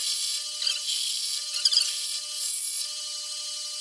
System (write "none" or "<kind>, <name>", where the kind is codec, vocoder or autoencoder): none